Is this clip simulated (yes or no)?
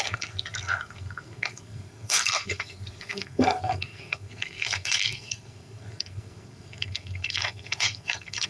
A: yes